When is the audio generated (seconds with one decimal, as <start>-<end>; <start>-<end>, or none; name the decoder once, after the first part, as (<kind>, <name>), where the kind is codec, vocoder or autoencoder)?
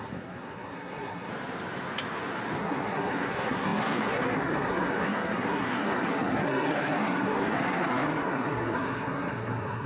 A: 0.0-1.3 (codec, SNAC); 2.6-9.9